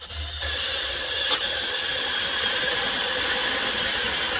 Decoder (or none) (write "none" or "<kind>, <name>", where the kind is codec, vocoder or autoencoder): none